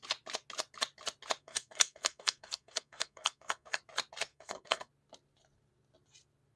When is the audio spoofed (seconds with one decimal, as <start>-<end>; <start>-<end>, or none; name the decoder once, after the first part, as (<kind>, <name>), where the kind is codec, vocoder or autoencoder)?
1.4-3.8 (codec, SNAC); 4.3-4.9